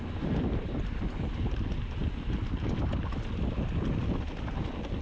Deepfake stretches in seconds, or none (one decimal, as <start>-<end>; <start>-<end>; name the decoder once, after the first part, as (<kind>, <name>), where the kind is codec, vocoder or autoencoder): none